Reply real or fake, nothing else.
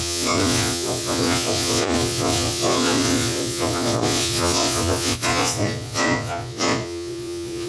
fake